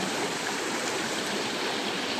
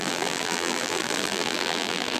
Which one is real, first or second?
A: first